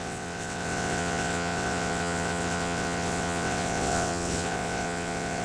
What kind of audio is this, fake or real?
fake